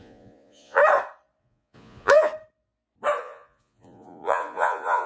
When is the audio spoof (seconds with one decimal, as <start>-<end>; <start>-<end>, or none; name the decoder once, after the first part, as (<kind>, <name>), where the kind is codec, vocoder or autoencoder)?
0.0-0.8 (vocoder, Vocos); 1.4-2.3; 3.2-5.1